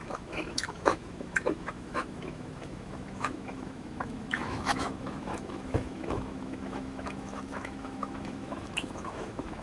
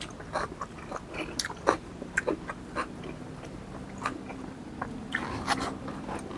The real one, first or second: second